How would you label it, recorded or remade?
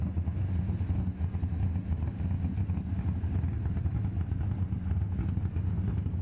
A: recorded